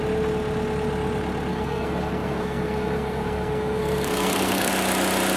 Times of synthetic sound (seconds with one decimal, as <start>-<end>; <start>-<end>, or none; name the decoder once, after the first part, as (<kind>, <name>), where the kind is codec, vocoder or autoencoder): 1.5-4.7 (codec, SNAC)